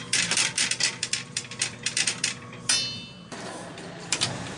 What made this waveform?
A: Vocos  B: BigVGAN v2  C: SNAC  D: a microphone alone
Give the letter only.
B